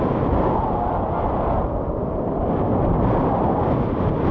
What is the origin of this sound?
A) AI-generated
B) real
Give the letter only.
B